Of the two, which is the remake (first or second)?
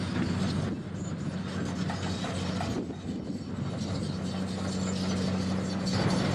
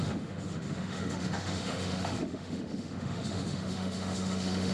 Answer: second